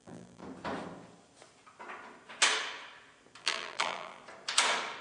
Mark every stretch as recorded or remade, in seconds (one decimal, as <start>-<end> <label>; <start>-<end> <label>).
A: 0.0-0.4 remade; 0.4-3.4 recorded; 3.4-4.2 remade; 4.2-5.0 recorded